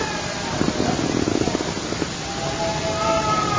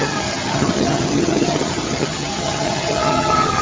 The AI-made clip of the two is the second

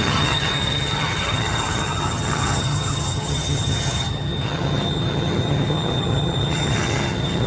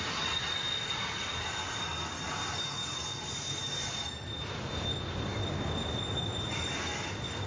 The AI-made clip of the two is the first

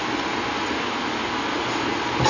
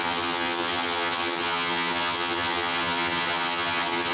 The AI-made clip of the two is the second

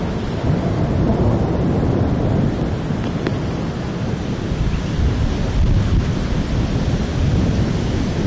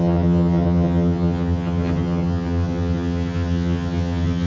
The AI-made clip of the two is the second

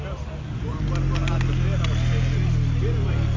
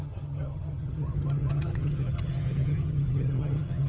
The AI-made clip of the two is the second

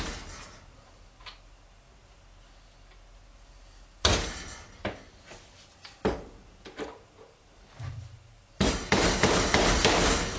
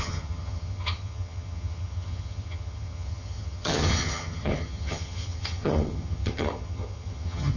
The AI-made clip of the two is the second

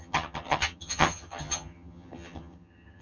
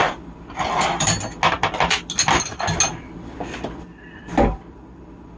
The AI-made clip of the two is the first